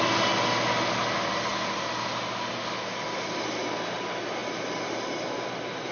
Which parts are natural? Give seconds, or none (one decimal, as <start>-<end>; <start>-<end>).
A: 0.0-5.9